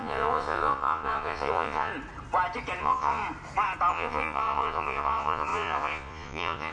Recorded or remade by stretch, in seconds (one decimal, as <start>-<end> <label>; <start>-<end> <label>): 0.0-1.9 remade; 1.9-2.8 recorded; 2.8-3.2 remade; 3.2-3.9 recorded; 3.9-6.7 remade